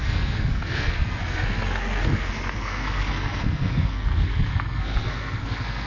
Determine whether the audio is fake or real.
fake